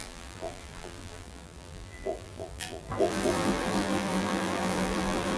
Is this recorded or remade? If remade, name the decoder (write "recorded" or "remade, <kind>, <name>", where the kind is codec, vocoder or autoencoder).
remade, vocoder, BigVGAN v2